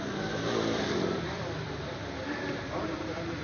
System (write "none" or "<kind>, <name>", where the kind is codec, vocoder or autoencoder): vocoder, BigVGAN v2